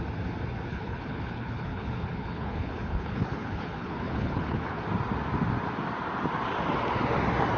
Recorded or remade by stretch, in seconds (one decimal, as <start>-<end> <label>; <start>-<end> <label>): 0.0-0.7 recorded; 0.7-4.8 remade; 4.8-7.6 recorded